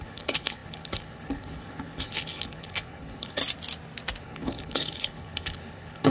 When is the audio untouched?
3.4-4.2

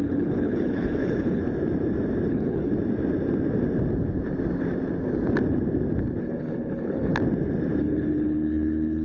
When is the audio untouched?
1.4-2.3; 2.7-6.2; 7.1-7.8

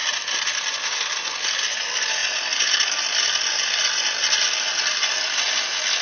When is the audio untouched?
0.0-6.0

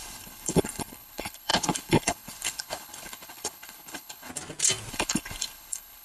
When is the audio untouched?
4.3-4.9

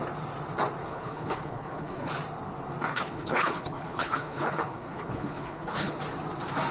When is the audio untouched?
0.0-0.8; 2.1-2.9; 6.0-6.7